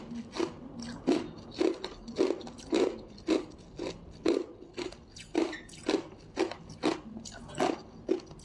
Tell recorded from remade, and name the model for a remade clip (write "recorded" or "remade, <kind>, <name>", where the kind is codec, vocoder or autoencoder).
recorded